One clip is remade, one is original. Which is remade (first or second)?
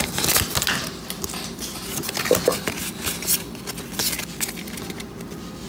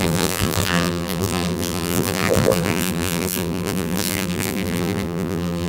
second